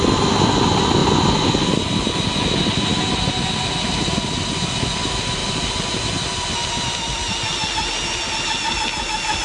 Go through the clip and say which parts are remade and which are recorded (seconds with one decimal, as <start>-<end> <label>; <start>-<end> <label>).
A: 0.0-9.4 recorded